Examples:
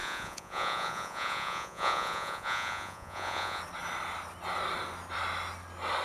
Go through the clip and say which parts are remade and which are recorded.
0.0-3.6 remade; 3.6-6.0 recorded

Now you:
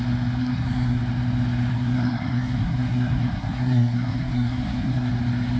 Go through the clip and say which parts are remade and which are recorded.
0.0-0.4 recorded; 0.4-1.0 remade; 1.0-1.7 recorded; 1.7-5.1 remade; 5.1-5.6 recorded